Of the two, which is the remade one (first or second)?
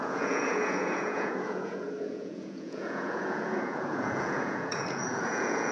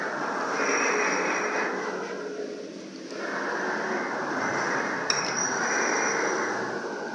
first